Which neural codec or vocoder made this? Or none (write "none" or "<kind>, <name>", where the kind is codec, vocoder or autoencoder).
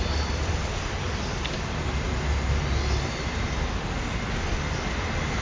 none